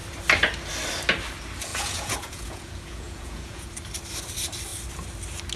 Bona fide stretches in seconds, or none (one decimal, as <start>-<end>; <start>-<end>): 0.0-1.7; 3.7-5.6